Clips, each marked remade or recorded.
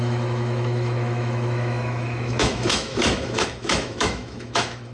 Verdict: remade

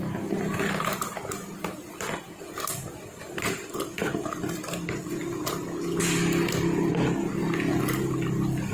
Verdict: recorded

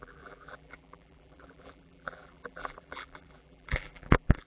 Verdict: remade